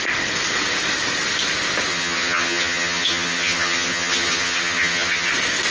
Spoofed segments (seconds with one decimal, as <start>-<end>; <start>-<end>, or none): 1.9-5.3